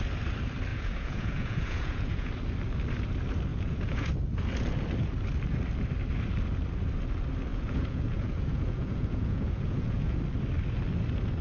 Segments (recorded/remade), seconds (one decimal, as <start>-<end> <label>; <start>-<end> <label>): 0.0-0.7 recorded; 0.7-2.3 remade; 2.3-3.5 recorded; 3.5-4.1 remade; 4.1-7.5 recorded; 7.5-10.2 remade; 10.2-11.4 recorded